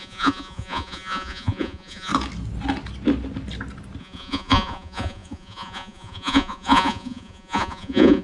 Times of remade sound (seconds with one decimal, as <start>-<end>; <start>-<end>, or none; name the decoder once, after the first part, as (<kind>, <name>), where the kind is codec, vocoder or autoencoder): 0.0-2.1 (vocoder, Vocos); 4.0-8.2